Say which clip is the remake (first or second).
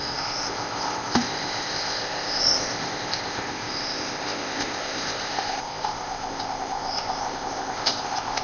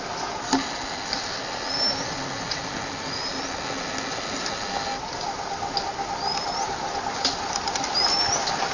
first